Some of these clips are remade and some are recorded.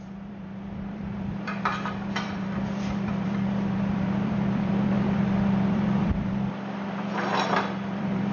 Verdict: remade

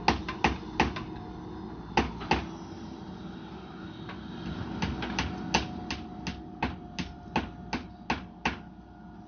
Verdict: recorded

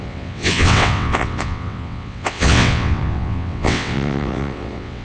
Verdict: remade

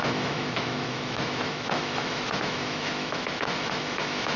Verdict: remade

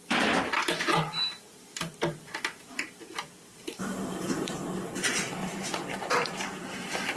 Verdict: remade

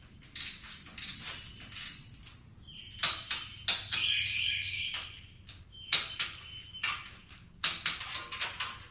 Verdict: recorded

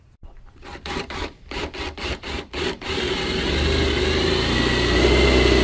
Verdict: recorded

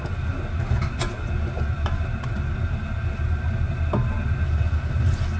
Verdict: recorded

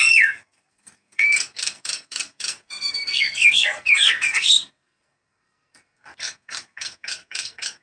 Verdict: remade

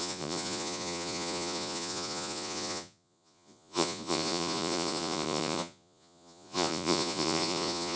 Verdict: remade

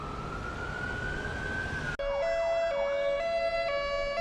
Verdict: recorded